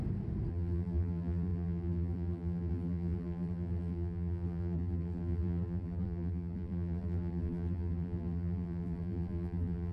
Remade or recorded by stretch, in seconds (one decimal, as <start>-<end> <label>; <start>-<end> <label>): 0.0-0.5 recorded; 0.5-9.9 remade